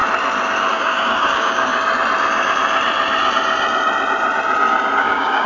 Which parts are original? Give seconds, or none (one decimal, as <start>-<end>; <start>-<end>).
0.0-0.7; 1.7-5.0